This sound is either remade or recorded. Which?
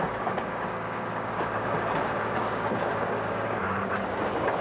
remade